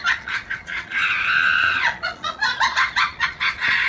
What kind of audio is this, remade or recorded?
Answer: remade